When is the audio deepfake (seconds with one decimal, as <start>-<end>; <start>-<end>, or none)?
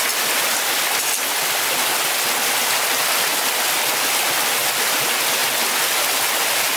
none